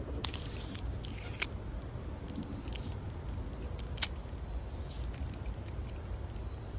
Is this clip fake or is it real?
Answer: real